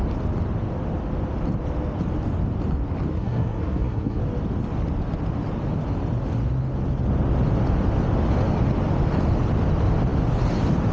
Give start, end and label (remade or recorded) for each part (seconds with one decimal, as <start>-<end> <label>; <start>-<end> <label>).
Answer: 0.0-3.1 recorded; 3.1-4.2 remade; 4.2-10.9 recorded